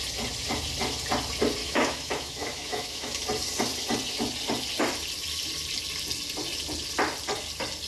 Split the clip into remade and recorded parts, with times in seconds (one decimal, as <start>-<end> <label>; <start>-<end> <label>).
0.0-1.6 recorded; 1.6-3.2 remade; 3.2-7.9 recorded